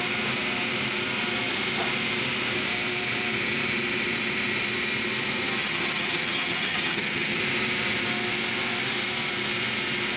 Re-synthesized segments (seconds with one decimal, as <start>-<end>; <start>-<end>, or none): 5.6-7.4